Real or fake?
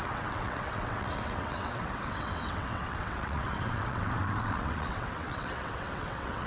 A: fake